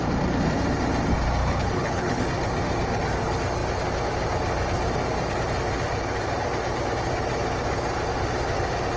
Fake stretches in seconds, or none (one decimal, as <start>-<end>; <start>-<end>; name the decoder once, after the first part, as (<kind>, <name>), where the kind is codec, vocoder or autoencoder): 1.4-2.2 (codec, HILCodec)